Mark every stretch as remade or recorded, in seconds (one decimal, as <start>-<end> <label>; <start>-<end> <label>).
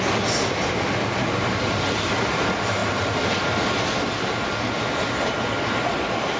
0.0-6.4 recorded